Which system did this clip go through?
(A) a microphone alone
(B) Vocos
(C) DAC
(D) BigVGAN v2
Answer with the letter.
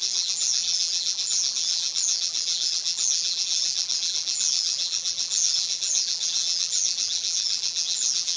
D